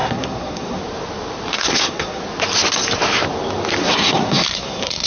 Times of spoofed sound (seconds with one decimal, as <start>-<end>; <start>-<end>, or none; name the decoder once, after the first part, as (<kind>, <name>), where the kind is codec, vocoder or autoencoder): 0.0-0.8 (codec, SNAC); 1.5-2.2; 3.8-5.1